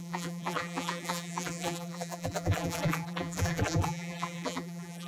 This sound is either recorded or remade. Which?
remade